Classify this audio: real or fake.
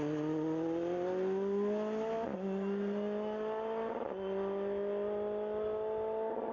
real